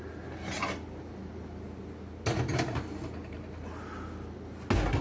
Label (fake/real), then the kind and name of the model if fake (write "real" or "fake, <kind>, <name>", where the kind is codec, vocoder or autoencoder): real